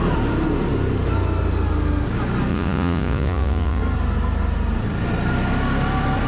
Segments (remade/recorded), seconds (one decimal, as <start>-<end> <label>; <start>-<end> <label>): 0.0-2.5 recorded; 2.5-3.8 remade; 3.8-6.3 recorded

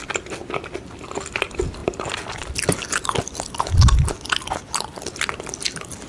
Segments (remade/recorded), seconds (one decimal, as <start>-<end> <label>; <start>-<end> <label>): 0.0-6.1 recorded